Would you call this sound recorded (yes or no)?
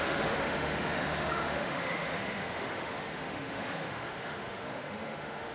no